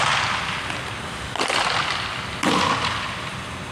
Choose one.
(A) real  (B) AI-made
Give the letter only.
A